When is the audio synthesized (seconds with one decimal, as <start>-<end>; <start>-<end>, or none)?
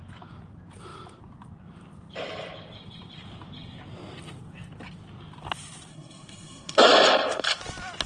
5.9-6.9